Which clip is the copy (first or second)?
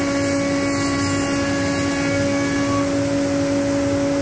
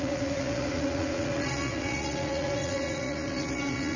second